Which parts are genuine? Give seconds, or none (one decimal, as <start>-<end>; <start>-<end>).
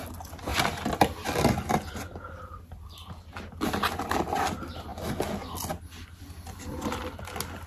0.0-7.7